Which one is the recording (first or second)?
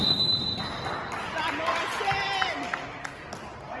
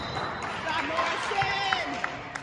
first